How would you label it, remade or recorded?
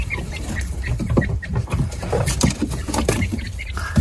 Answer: recorded